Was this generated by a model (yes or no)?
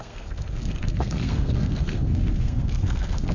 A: yes